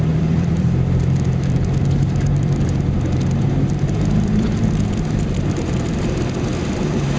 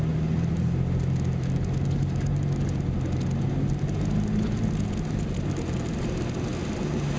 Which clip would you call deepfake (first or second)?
first